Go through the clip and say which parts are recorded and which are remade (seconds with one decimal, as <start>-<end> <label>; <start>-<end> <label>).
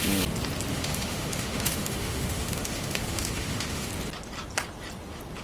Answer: 0.0-0.7 recorded; 0.7-3.9 remade; 3.9-5.4 recorded